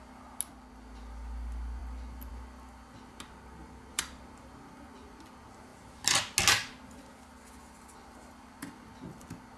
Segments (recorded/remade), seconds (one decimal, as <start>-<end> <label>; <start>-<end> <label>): 0.0-3.9 recorded; 3.9-5.3 remade; 5.3-8.0 recorded; 8.0-8.9 remade; 8.9-9.6 recorded